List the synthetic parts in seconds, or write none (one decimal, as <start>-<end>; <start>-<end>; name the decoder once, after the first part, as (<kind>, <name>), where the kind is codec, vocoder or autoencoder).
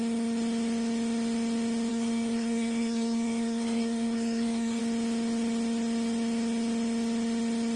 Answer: 1.9-4.8 (codec, SNAC)